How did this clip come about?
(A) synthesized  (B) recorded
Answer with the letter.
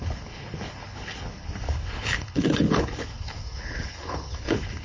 A